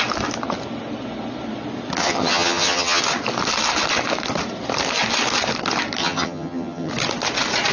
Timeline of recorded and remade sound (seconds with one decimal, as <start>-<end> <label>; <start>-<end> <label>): 0.0-2.0 recorded; 2.0-3.0 remade; 3.0-6.0 recorded; 6.0-6.9 remade; 6.9-7.7 recorded